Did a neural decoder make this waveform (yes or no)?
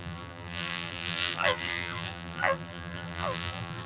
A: yes